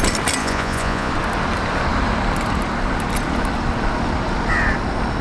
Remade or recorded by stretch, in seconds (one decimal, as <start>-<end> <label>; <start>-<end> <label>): 0.0-0.4 recorded; 0.4-1.1 remade; 1.1-5.2 recorded